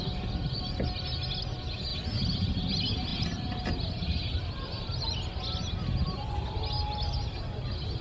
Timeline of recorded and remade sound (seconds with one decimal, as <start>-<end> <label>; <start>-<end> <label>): 0.0-8.0 recorded